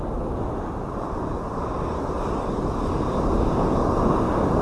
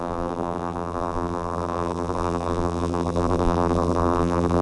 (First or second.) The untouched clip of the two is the first